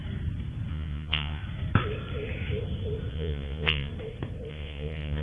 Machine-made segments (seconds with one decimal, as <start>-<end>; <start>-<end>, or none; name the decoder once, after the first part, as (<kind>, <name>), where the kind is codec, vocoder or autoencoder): 0.7-1.4 (vocoder, Vocos); 3.1-3.9; 4.5-5.2